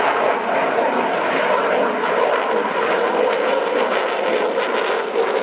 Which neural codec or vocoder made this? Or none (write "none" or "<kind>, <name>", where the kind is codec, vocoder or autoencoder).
none